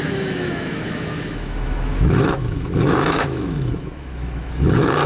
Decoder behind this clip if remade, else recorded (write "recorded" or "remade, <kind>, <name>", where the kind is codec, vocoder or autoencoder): remade, autoencoder, DAC-VAE